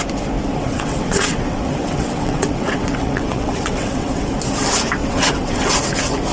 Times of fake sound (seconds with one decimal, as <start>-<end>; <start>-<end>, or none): 0.5-4.3; 5.0-5.7